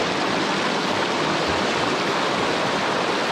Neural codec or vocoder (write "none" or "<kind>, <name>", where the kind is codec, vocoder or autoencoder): none